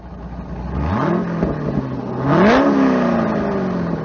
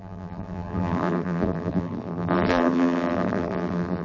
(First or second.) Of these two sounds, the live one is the first